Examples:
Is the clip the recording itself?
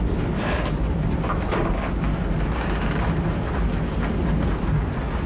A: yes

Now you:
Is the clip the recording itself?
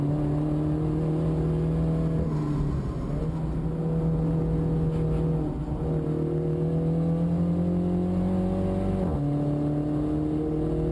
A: yes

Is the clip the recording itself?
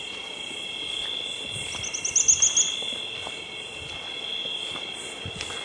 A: yes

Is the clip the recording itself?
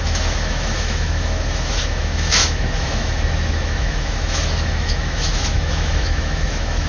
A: no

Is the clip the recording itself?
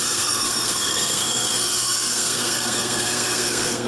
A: no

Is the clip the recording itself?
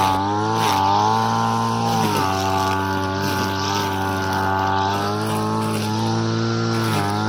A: yes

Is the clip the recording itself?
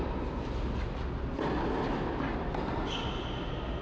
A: yes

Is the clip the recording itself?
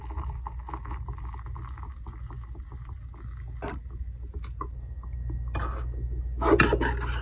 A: yes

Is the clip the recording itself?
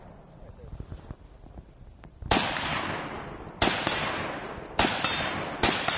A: yes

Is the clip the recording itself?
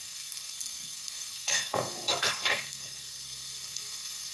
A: no